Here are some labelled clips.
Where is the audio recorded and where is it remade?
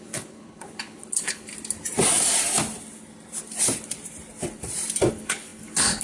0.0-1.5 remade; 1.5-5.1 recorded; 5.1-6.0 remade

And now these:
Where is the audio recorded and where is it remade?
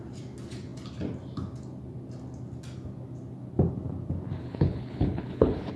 0.0-4.4 recorded; 4.4-5.8 remade